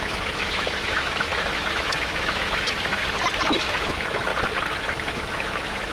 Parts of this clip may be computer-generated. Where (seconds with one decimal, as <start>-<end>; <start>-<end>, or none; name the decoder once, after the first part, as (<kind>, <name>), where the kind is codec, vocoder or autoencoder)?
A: 0.0-3.0 (autoencoder, DAC-VAE); 3.5-4.3; 4.8-5.9